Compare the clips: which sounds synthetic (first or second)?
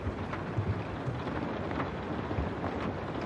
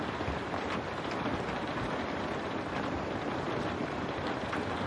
second